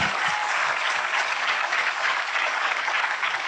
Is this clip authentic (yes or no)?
no